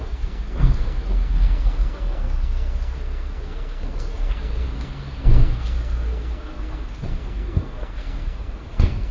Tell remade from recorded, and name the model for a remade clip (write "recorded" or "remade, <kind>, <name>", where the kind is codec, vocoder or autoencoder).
remade, codec, SNAC